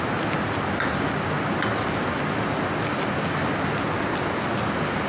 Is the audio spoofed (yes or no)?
no